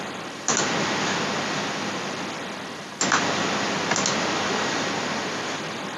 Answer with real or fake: real